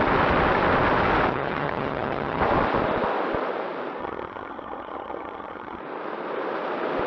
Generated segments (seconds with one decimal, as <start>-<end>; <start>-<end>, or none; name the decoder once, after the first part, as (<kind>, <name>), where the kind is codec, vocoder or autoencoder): 1.3-2.4 (vocoder, HiFi-GAN); 4.0-5.8